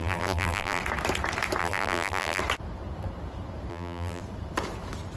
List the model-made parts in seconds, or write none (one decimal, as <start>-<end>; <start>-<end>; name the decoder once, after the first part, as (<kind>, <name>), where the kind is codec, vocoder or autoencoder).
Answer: 0.0-0.8 (vocoder, BigVGAN v2); 1.6-2.4; 3.7-4.2